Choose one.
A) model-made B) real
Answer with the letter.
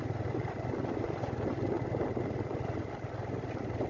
B